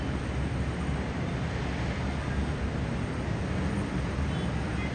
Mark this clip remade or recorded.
recorded